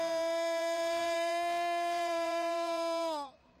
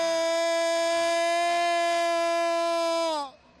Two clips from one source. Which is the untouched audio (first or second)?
second